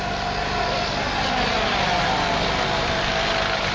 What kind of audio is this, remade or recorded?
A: recorded